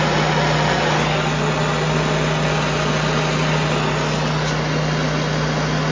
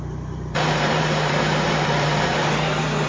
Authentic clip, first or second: first